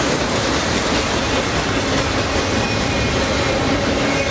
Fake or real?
real